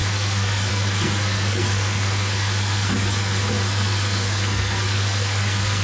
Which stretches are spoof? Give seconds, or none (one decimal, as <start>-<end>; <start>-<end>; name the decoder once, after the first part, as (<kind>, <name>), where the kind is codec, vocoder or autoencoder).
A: 0.0-5.8 (codec, SNAC)